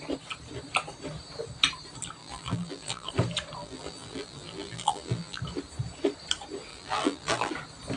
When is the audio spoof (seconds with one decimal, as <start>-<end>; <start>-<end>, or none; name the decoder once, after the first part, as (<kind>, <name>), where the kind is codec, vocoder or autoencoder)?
2.2-3.1 (vocoder, BigVGAN v2); 3.6-5.4; 6.7-7.5